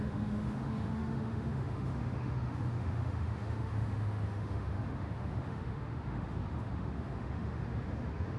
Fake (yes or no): yes